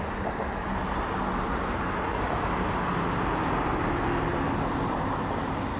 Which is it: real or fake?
real